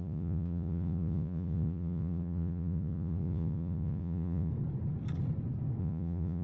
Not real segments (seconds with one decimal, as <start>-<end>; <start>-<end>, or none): 0.0-4.5; 5.8-6.4